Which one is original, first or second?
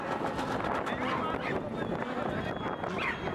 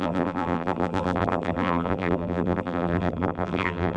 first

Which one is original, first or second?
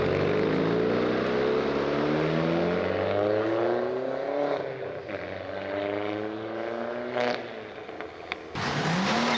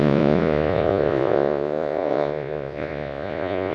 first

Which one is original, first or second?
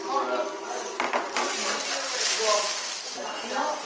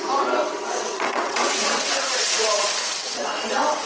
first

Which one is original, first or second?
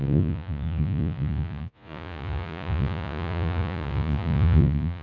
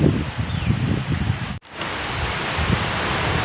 second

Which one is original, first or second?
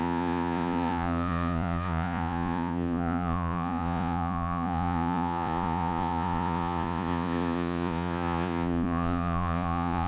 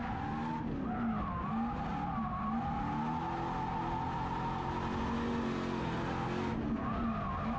second